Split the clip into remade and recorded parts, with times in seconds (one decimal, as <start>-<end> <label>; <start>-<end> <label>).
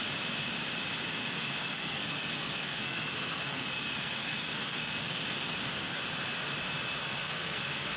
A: 0.0-1.2 recorded; 1.2-6.0 remade; 6.0-7.0 recorded; 7.0-8.0 remade